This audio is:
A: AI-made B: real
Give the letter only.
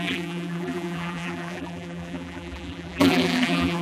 A